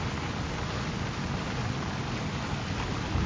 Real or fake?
real